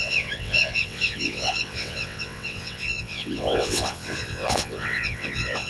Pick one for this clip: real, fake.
fake